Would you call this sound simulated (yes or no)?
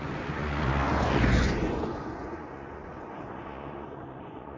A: yes